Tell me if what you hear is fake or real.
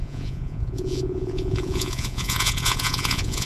fake